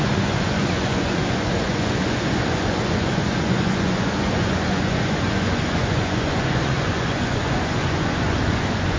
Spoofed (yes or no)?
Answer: yes